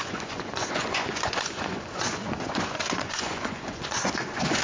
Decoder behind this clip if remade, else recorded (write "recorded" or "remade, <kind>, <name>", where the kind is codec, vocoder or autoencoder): remade, vocoder, Vocos